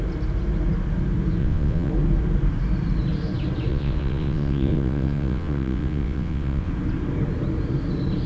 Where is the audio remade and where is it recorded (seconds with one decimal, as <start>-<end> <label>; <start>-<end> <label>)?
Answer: 0.0-1.4 recorded; 1.4-1.9 remade; 1.9-3.7 recorded; 3.7-6.7 remade; 6.7-8.3 recorded